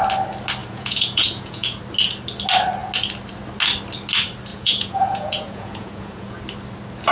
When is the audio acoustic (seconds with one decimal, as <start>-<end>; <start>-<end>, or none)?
0.0-0.6; 1.8-4.5; 6.4-7.1